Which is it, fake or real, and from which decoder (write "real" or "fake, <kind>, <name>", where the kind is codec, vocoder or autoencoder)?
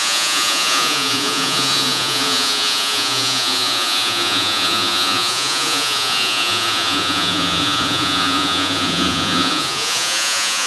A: fake, vocoder, Vocos